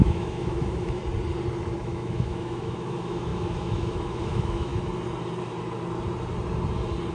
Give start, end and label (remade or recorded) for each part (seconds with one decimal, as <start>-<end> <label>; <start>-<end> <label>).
0.0-1.0 remade; 1.0-1.8 recorded; 1.8-4.7 remade; 4.7-7.1 recorded